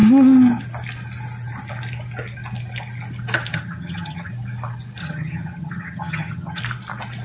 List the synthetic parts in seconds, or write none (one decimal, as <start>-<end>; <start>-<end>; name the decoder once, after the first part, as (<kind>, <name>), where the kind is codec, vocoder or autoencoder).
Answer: 3.5-4.3 (vocoder, HiFi-GAN); 5.0-6.6